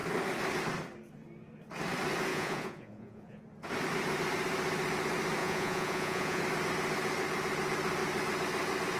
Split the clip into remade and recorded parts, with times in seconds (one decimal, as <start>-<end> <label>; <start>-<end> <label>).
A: 0.0-2.3 recorded; 2.3-3.4 remade; 3.4-5.4 recorded; 5.4-6.4 remade; 6.4-9.0 recorded